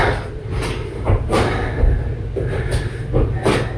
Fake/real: real